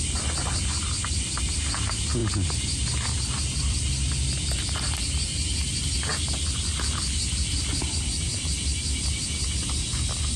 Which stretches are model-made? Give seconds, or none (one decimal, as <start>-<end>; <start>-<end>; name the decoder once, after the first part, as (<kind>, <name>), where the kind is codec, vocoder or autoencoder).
none